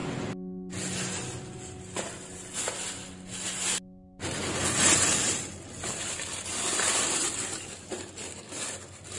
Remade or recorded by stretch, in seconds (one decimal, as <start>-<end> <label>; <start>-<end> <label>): 0.0-9.2 recorded